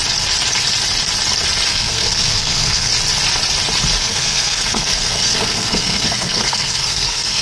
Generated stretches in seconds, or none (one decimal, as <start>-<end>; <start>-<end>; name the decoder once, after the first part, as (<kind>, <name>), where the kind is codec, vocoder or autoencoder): 1.7-2.9 (codec, SNAC); 4.0-7.4